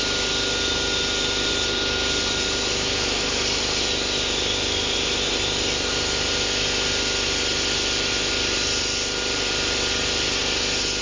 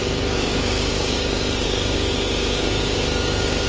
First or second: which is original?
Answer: first